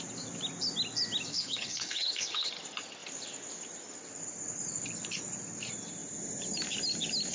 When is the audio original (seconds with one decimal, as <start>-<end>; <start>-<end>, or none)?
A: 0.0-1.3; 2.5-7.3